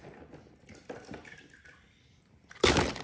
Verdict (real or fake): real